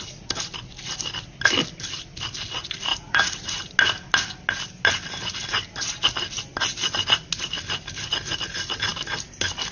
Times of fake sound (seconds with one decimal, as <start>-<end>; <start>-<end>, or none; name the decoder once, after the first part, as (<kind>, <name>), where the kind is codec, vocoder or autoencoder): 2.9-3.7 (vocoder, Vocos)